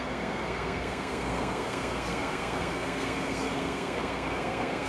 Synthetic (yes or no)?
yes